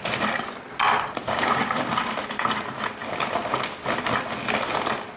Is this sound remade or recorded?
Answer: recorded